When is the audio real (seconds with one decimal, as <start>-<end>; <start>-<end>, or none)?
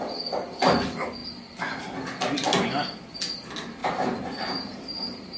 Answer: 0.0-3.8